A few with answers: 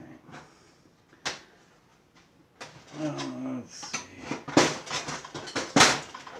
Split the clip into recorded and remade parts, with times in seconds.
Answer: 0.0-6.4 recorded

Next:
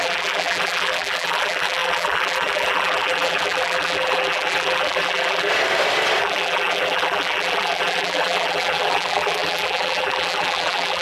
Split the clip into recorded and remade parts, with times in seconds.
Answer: 0.0-5.5 remade; 5.5-6.2 recorded; 6.2-11.0 remade

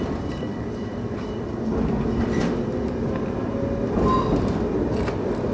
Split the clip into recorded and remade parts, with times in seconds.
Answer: 0.0-5.5 recorded